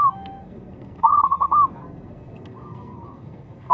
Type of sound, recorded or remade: remade